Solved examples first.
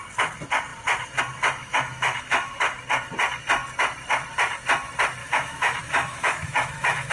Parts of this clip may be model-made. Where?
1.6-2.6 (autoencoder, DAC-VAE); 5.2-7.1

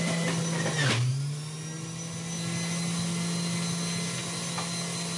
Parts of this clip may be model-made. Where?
none

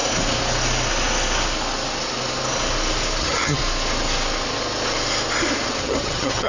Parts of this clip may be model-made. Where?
3.2-3.6 (vocoder, HiFi-GAN); 5.8-6.5